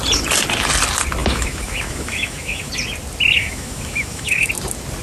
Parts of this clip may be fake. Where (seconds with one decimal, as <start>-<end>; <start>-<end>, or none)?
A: 1.2-2.7; 3.4-4.5